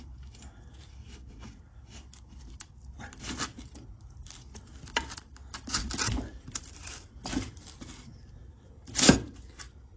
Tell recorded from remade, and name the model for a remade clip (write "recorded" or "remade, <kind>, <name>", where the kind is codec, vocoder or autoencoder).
recorded